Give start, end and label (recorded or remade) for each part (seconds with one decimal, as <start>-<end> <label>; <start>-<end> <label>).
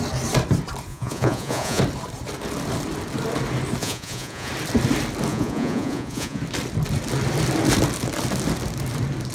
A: 0.0-0.9 recorded; 0.9-1.8 remade; 1.8-3.8 recorded; 3.8-4.5 remade; 4.5-5.3 recorded; 5.3-6.4 remade; 6.4-9.3 recorded